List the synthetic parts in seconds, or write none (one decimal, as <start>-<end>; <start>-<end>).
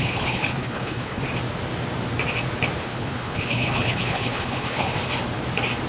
0.0-1.2; 2.8-5.0